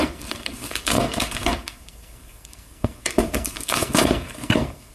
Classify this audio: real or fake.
fake